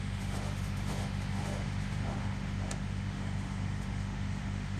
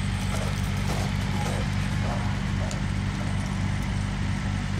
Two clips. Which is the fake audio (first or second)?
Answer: first